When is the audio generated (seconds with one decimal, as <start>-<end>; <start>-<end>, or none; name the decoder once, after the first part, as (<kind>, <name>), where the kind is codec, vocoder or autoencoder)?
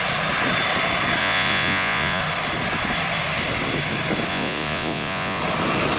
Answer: 1.2-2.2 (vocoder, Vocos); 4.3-5.4